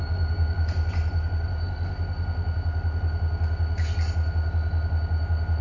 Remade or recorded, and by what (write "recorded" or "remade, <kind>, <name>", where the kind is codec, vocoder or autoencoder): recorded